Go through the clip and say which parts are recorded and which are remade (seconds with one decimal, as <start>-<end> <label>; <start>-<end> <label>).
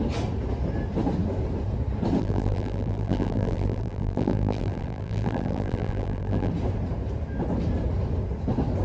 0.0-2.2 recorded; 2.2-6.5 remade; 6.5-8.8 recorded